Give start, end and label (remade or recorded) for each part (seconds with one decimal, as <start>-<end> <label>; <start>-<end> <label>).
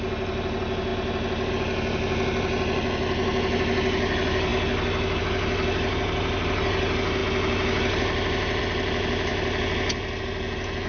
0.0-10.9 recorded